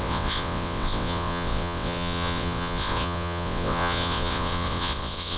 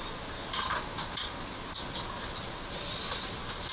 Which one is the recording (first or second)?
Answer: second